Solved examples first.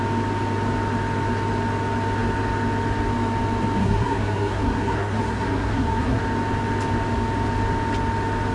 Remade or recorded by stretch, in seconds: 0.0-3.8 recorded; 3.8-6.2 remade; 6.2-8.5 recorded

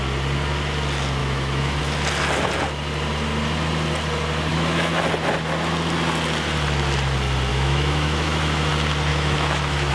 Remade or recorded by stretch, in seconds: 0.0-1.2 recorded; 1.2-1.8 remade; 1.8-4.5 recorded; 4.5-5.0 remade; 5.0-7.5 recorded; 7.5-8.7 remade; 8.7-9.1 recorded; 9.1-9.9 remade